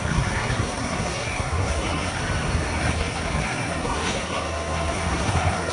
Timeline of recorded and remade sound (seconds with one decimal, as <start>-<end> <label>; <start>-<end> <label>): 0.0-2.2 remade; 2.2-2.8 recorded; 2.8-5.7 remade